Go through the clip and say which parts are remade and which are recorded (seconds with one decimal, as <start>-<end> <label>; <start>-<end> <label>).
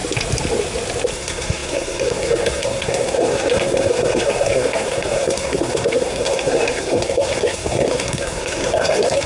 0.0-1.1 recorded; 1.1-9.3 remade